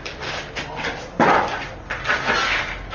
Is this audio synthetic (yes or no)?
no